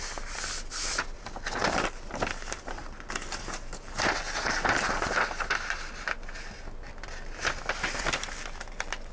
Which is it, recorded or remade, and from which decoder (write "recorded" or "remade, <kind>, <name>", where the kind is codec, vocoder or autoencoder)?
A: recorded